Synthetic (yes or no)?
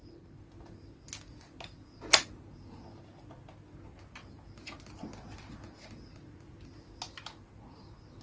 no